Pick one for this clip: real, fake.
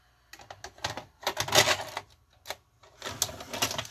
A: real